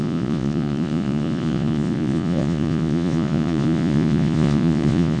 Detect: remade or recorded remade